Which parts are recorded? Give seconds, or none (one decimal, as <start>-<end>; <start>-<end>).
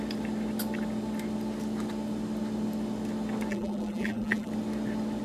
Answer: 0.0-3.5; 4.5-5.2